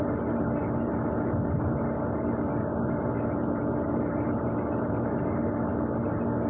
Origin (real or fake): real